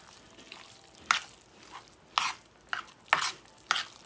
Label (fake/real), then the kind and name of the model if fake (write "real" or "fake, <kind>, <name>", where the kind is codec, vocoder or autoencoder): real